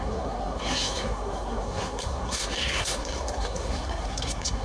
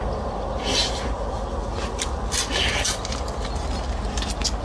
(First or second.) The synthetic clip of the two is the first